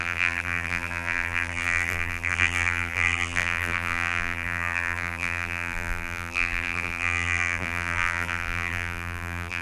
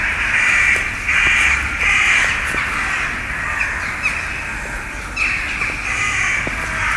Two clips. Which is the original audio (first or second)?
second